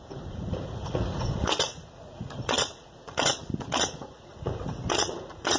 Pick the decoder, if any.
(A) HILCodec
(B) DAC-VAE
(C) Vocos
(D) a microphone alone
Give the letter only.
C